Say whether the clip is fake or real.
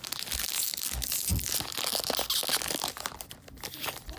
real